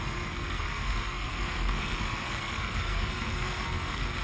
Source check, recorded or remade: remade